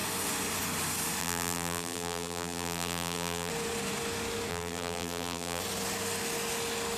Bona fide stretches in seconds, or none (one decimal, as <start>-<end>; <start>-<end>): 0.0-1.2; 3.5-4.5; 5.6-7.0